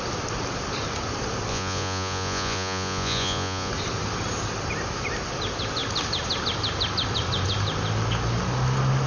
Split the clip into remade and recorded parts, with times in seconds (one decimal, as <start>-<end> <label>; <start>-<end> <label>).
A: 0.0-1.5 recorded; 1.5-3.7 remade; 3.7-9.1 recorded